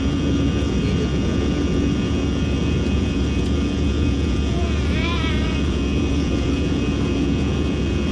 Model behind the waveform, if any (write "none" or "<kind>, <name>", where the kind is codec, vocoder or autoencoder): vocoder, Vocos